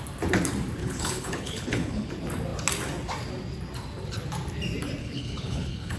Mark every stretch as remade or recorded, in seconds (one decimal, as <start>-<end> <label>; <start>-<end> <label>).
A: 0.0-0.8 recorded; 0.8-2.1 remade; 2.1-5.0 recorded; 5.0-6.0 remade